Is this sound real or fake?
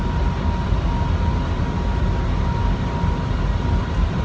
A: real